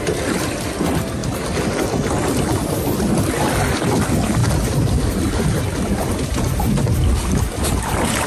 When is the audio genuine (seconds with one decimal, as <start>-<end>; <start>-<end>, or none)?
0.0-8.3